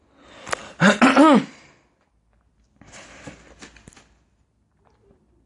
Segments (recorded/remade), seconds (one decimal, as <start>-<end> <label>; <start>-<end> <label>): 0.0-5.5 recorded